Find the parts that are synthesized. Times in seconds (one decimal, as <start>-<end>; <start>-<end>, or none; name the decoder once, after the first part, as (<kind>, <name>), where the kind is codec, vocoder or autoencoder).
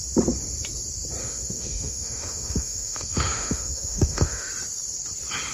1.2-4.5 (autoencoder, DAC-VAE)